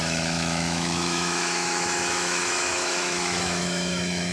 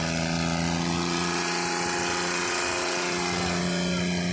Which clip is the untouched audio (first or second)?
second